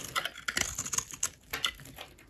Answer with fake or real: real